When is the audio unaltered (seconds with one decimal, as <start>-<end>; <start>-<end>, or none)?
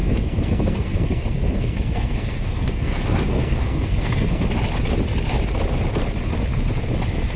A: 4.4-7.4